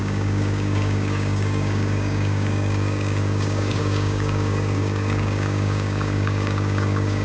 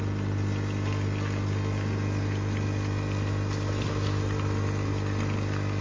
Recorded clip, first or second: second